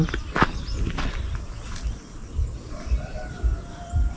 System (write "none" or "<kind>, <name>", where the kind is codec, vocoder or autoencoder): vocoder, BigVGAN v2